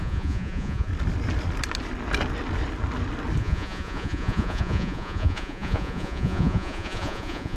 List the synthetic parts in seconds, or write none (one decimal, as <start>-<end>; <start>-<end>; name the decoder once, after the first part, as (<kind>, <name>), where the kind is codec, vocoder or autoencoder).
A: 0.0-0.9 (vocoder, Vocos); 3.4-7.6